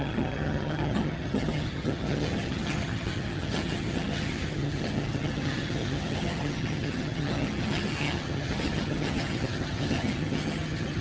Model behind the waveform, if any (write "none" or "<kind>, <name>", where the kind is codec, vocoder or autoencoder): vocoder, HiFi-GAN